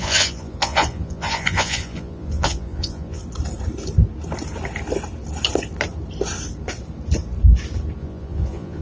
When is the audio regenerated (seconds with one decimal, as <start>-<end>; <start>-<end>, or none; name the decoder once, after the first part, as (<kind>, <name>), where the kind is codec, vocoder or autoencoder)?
0.0-3.2 (vocoder, Vocos); 8.0-8.8